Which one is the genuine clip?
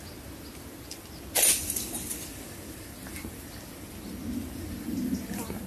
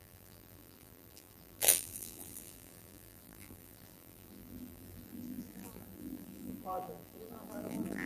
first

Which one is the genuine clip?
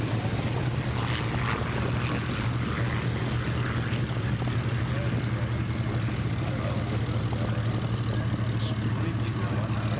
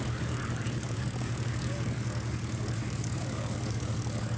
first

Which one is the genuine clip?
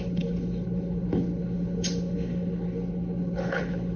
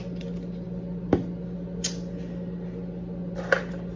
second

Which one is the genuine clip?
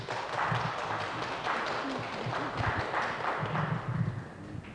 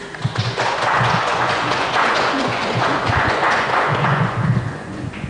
first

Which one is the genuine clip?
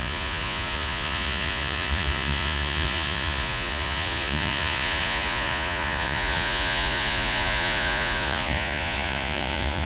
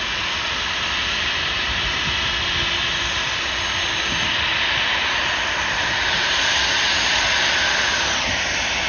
second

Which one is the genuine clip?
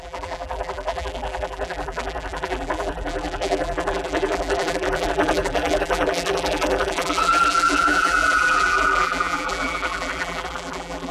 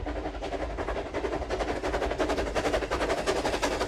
second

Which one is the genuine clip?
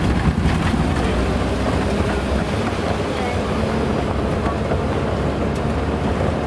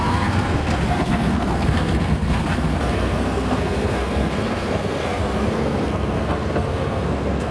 first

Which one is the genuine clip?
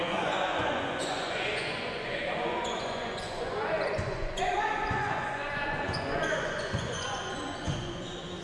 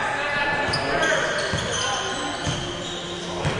second